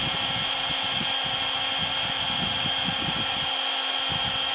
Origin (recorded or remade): recorded